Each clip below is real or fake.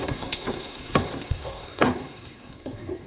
fake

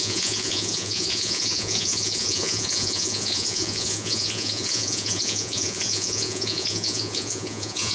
fake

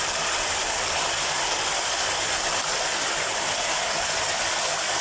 real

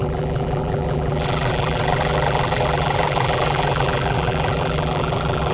fake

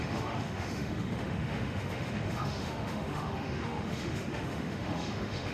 fake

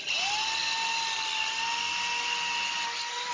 real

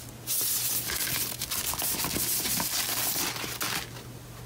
real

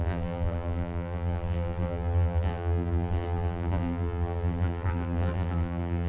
fake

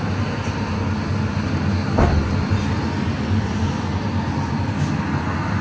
real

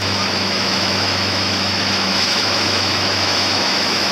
fake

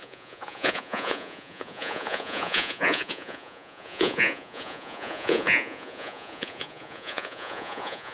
fake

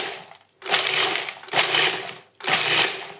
real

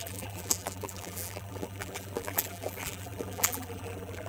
fake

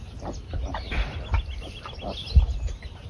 real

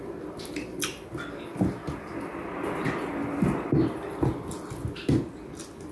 real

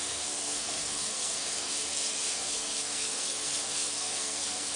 fake